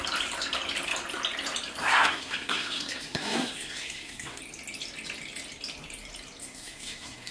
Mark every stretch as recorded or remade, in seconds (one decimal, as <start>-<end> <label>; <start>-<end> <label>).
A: 0.0-1.8 recorded; 1.8-4.4 remade; 4.4-6.4 recorded; 6.4-7.3 remade